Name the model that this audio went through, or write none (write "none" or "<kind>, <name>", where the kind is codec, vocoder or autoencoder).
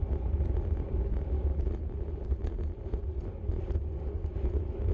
none